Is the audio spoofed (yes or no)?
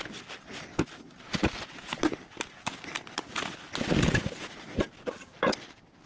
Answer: no